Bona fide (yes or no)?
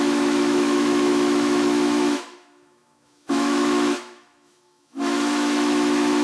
no